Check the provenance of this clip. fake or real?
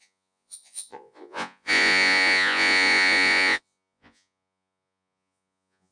fake